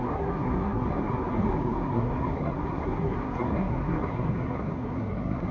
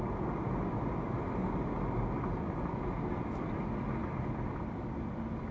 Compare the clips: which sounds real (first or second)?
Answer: second